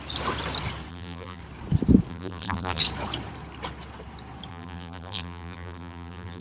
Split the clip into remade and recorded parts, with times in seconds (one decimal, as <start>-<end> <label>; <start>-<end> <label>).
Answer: 0.0-0.9 recorded; 0.9-1.4 remade; 1.4-2.1 recorded; 2.1-2.8 remade; 2.8-4.5 recorded; 4.5-6.4 remade